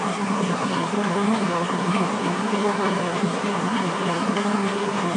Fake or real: fake